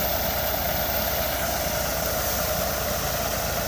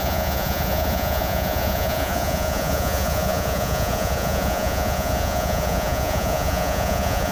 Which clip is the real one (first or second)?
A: first